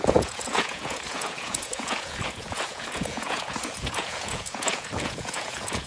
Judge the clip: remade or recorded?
remade